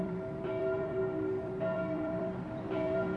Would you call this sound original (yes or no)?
no